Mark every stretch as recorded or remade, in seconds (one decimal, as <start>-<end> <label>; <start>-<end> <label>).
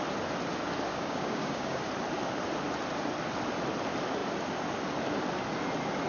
0.0-0.9 recorded; 0.9-1.8 remade; 1.8-6.1 recorded